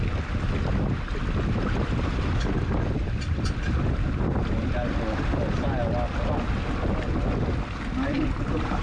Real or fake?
real